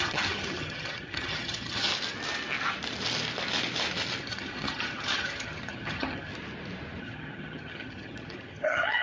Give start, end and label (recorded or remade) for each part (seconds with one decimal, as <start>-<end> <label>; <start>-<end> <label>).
0.0-1.9 remade; 1.9-4.2 recorded; 4.2-6.3 remade; 6.3-7.0 recorded; 7.0-9.0 remade